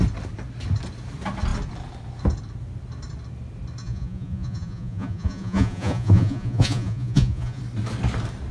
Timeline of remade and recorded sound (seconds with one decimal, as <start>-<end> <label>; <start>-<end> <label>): 0.0-3.8 recorded; 3.8-7.6 remade; 7.6-8.5 recorded

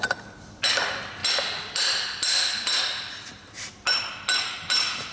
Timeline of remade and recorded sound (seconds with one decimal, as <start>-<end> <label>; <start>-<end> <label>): 0.0-5.1 recorded